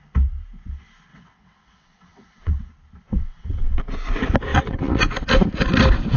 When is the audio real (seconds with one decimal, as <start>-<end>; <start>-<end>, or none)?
0.0-1.1; 2.7-3.1; 3.8-4.5; 5.0-6.2